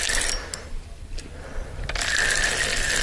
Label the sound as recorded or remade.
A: recorded